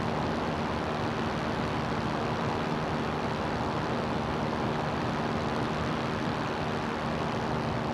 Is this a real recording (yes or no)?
yes